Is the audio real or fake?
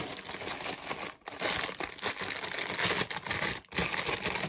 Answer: real